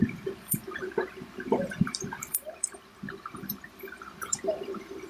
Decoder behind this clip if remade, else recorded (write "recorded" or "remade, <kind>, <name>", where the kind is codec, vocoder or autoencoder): remade, vocoder, BigVGAN v2